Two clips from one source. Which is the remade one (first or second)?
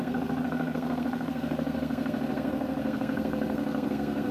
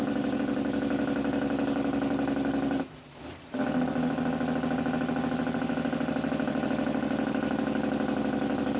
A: first